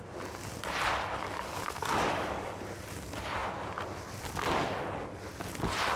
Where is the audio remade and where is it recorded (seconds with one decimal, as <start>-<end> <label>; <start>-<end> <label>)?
0.0-1.2 recorded; 1.2-2.6 remade; 2.6-6.0 recorded